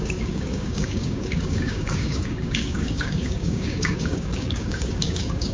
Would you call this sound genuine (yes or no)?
no